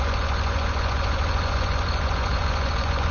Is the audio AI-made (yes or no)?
yes